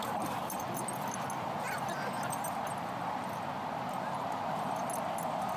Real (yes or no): yes